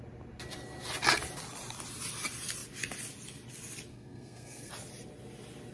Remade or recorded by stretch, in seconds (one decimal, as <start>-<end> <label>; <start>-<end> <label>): 0.0-3.9 recorded; 3.9-4.7 remade; 4.7-5.7 recorded